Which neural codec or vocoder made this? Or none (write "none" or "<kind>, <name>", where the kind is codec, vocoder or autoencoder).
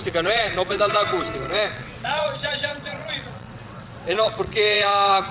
vocoder, WaveNeXt